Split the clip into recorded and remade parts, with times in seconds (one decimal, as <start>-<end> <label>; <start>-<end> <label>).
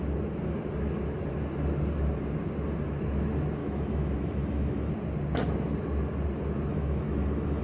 0.0-3.6 recorded; 3.6-4.9 remade; 4.9-6.7 recorded; 6.7-7.6 remade